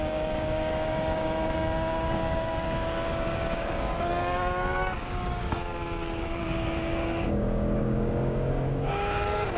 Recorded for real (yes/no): no